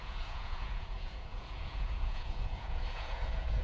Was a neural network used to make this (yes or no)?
yes